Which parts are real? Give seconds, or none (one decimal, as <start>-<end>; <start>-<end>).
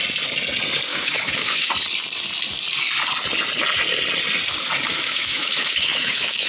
0.0-0.9; 1.7-4.9